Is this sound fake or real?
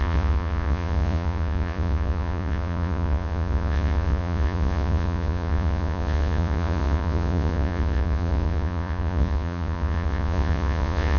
fake